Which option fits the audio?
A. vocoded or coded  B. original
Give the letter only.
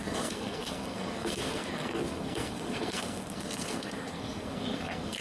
A